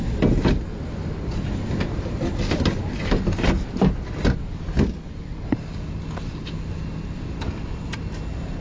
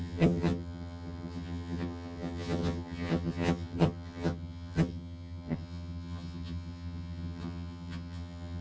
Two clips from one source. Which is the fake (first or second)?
second